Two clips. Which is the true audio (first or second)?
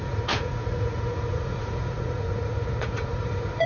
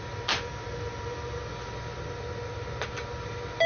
second